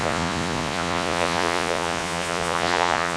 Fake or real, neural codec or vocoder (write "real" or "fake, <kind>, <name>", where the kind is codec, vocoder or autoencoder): fake, vocoder, Vocos